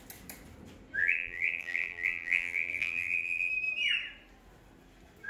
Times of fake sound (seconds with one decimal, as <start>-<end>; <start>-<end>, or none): 1.0-3.5

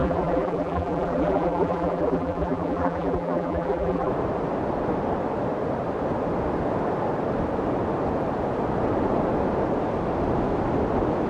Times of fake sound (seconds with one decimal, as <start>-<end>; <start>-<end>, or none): 0.0-4.1